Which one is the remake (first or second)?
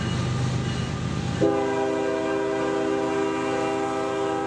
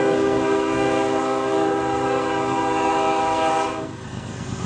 second